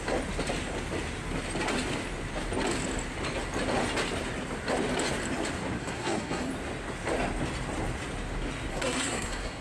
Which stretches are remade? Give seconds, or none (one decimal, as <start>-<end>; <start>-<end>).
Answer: 5.8-6.5; 8.7-9.6